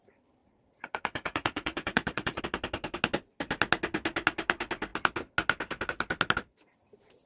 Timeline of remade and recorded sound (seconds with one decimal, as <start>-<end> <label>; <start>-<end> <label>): 0.0-0.4 recorded; 0.4-2.4 remade; 2.4-7.3 recorded